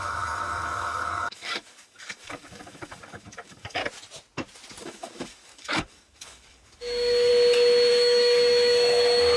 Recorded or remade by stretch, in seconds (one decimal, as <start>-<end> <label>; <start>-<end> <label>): 0.0-3.8 remade; 3.8-4.8 recorded; 4.8-7.3 remade; 7.3-7.9 recorded; 7.9-9.4 remade